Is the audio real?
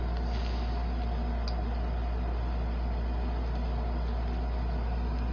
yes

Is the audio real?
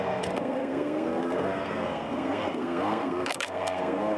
no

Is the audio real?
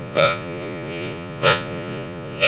no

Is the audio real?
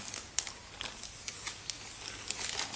yes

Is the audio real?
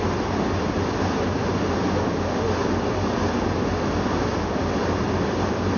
yes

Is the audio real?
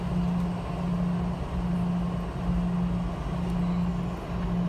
yes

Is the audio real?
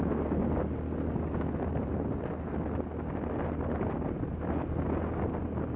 yes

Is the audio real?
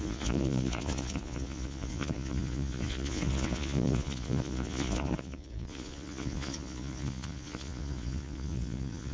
no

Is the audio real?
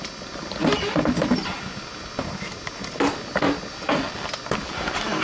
yes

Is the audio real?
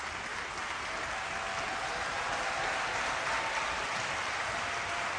yes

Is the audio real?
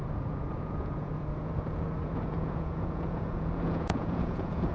no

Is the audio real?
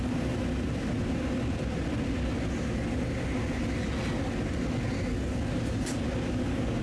yes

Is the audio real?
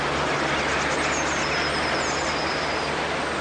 yes